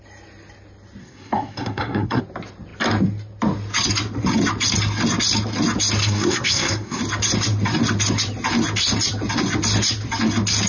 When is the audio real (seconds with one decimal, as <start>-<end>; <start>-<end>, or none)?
0.0-1.0; 2.2-6.0; 7.0-10.7